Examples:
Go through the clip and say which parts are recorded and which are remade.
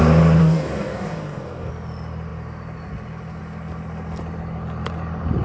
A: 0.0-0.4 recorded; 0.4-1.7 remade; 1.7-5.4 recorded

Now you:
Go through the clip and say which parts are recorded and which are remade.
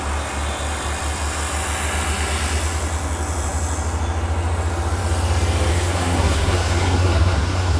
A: 0.0-5.7 recorded; 5.7-7.8 remade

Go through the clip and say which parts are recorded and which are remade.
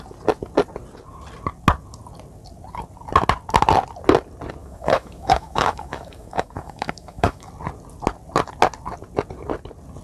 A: 0.0-4.6 recorded; 4.6-7.5 remade; 7.5-10.0 recorded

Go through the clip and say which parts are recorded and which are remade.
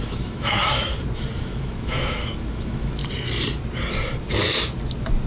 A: 0.0-0.9 remade; 0.9-1.4 recorded; 1.4-3.0 remade; 3.0-5.3 recorded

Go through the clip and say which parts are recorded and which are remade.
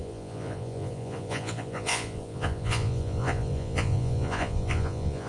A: 0.0-5.3 remade